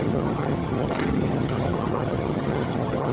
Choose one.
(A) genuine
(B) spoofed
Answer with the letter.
B